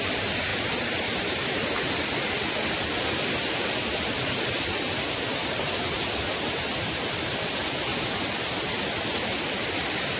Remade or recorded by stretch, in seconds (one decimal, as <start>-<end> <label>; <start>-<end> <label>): 0.0-0.5 recorded; 0.5-1.5 remade; 1.5-5.4 recorded; 5.4-5.9 remade; 5.9-10.2 recorded